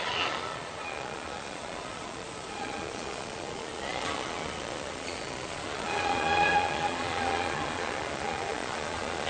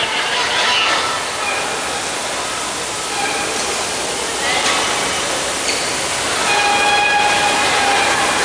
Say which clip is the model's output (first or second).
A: first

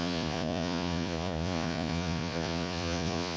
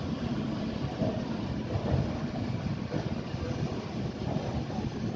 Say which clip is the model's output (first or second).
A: first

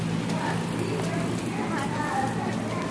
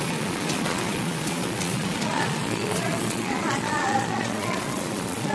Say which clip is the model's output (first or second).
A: second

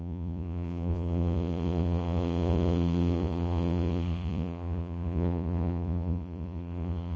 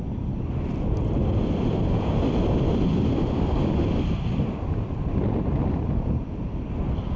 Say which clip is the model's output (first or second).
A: first